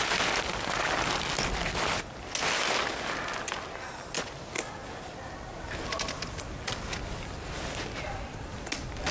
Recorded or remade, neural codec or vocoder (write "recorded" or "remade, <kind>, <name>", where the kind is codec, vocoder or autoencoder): recorded